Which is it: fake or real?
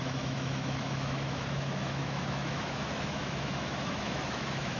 fake